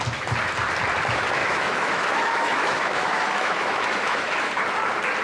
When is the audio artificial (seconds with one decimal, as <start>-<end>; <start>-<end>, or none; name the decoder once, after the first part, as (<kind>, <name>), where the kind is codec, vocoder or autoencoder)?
1.4-4.5 (autoencoder, DAC-VAE)

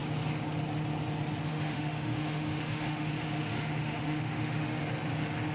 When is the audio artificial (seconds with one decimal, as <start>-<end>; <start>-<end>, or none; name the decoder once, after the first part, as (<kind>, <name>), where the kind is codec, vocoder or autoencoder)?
1.5-4.8 (autoencoder, DAC-VAE)

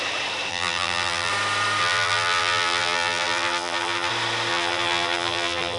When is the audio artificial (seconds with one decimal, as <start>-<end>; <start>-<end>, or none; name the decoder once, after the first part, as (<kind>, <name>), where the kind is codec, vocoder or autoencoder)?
0.5-1.3 (vocoder, BigVGAN v2); 1.8-4.1; 4.5-5.8

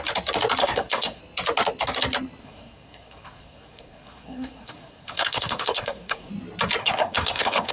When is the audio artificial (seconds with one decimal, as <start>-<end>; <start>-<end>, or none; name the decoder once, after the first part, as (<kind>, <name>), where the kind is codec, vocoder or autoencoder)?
0.6-1.2 (codec, SNAC); 2.4-6.3; 6.8-7.7

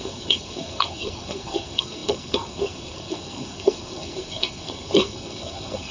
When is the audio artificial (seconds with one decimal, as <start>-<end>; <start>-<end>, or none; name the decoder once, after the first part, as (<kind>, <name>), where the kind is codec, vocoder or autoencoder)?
0.0-5.9 (codec, SNAC)